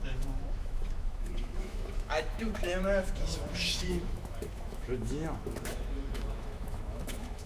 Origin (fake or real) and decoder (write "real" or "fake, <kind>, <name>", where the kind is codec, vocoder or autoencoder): fake, autoencoder, DAC-VAE